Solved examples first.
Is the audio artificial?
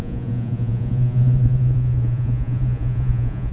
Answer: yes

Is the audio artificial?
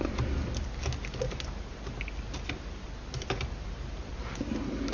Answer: no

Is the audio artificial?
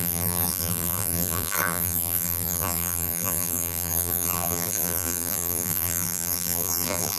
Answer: yes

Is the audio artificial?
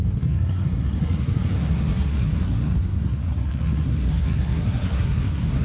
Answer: yes